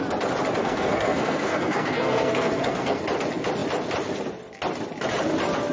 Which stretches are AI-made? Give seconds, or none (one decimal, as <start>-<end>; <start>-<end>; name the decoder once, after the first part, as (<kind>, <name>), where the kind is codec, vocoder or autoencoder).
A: 0.6-3.0 (codec, SNAC)